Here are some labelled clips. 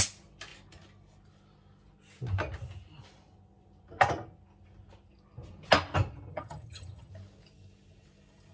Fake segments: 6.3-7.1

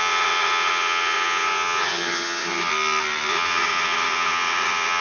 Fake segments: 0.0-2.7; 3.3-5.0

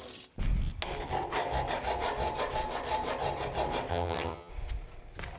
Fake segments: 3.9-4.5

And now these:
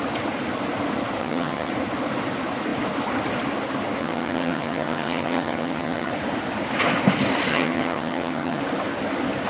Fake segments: 1.2-1.7; 4.0-6.1; 7.5-8.6

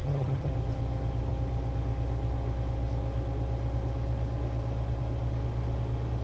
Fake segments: 0.0-0.5